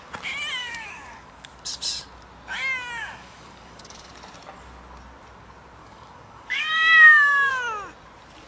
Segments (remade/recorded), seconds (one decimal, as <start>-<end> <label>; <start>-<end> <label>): 0.0-0.6 recorded; 0.6-1.6 remade; 1.6-3.0 recorded; 3.0-4.1 remade; 4.1-5.8 recorded; 5.8-7.5 remade; 7.5-8.5 recorded